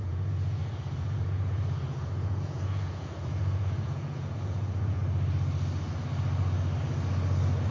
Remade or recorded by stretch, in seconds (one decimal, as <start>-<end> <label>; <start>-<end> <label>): 0.0-5.0 remade; 5.0-7.7 recorded